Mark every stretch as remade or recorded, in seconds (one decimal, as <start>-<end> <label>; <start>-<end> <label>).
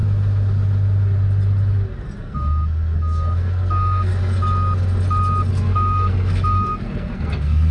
0.0-2.2 recorded; 2.2-4.1 remade; 4.1-5.5 recorded; 5.5-7.7 remade